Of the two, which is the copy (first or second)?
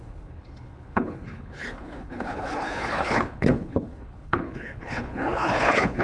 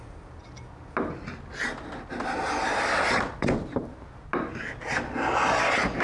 first